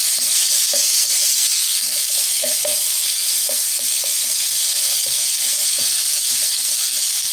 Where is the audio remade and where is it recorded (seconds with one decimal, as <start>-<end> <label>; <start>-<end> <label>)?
0.0-7.3 remade